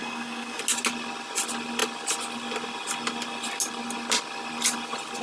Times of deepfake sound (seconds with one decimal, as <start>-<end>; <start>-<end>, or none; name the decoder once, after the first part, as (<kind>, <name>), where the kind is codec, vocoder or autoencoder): 0.0-0.6 (codec, SNAC)